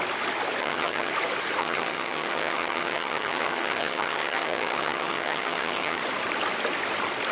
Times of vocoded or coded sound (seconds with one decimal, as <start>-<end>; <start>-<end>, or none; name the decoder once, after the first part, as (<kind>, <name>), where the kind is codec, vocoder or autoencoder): 0.6-1.1 (vocoder, HiFi-GAN); 1.6-6.0